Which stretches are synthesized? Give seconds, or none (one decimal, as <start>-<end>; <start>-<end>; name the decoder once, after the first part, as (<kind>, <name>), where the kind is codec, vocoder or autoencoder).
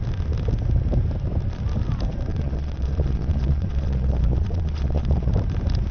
2.3-5.3 (vocoder, Vocos)